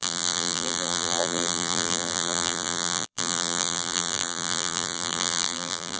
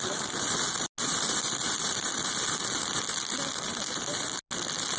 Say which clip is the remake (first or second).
first